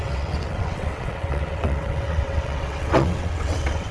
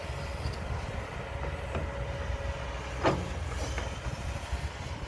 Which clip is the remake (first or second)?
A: first